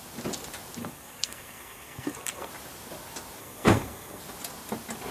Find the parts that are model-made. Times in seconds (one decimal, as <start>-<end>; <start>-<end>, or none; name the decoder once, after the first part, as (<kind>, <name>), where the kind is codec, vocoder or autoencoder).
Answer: 0.8-2.5 (codec, SNAC); 3.4-4.2